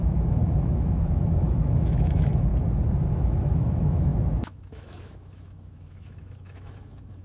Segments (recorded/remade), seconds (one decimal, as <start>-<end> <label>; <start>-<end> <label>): 0.0-2.5 remade; 2.5-3.1 recorded; 3.1-7.2 remade